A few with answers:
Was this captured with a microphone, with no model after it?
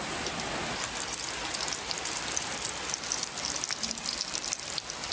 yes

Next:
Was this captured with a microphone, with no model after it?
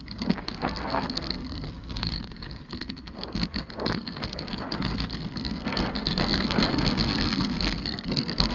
no